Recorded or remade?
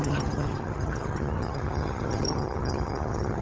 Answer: remade